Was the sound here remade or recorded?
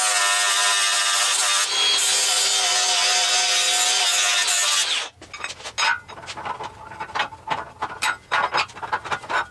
recorded